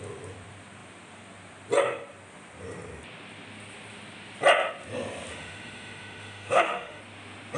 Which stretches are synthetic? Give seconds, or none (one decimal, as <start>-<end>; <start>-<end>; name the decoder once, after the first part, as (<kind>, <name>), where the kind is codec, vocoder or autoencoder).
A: 5.3-7.0 (autoencoder, DAC-VAE)